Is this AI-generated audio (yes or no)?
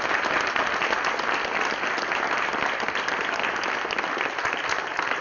no